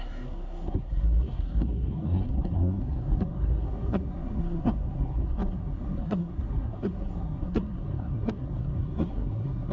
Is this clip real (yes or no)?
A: no